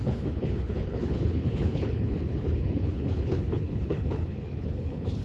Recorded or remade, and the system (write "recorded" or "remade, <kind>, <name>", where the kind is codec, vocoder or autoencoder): remade, codec, HILCodec